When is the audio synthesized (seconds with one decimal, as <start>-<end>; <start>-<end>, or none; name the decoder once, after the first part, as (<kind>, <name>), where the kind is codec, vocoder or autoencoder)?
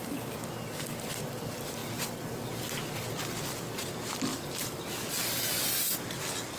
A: 4.3-4.8 (vocoder, BigVGAN v2)